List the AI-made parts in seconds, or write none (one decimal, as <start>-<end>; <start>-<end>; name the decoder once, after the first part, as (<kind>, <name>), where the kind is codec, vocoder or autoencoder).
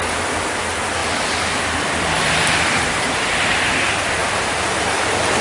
1.0-3.7 (vocoder, BigVGAN v2); 4.2-5.4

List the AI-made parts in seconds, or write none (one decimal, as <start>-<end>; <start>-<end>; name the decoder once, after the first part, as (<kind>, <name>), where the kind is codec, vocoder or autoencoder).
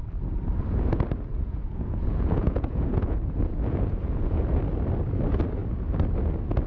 1.3-4.5 (vocoder, Vocos)